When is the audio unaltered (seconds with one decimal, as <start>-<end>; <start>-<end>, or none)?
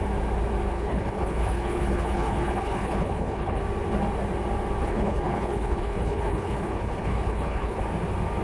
0.0-0.7; 3.6-4.8; 7.8-8.4